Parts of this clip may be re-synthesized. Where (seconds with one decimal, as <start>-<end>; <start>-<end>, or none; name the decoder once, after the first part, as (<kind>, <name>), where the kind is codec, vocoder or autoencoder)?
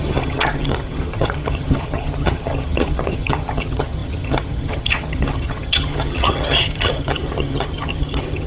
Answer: 0.0-8.5 (vocoder, HiFi-GAN)